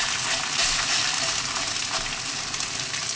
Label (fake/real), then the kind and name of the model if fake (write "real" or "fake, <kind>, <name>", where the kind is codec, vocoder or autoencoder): real